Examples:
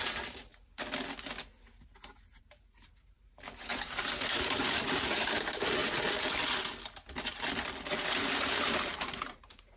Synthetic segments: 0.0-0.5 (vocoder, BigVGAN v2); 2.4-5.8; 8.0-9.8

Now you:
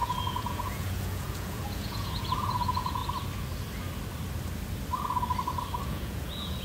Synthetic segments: 0.0-3.0 (vocoder, Vocos); 5.9-6.6

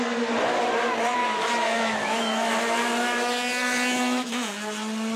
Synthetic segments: 1.2-4.3 (autoencoder, DAC-VAE)